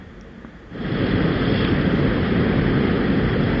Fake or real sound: real